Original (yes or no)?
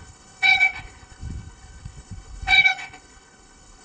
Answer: no